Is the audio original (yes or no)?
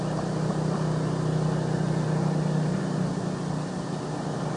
yes